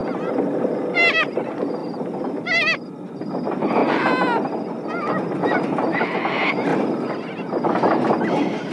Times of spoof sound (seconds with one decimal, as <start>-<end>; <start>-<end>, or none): 0.0-0.8; 1.8-2.4; 6.7-8.1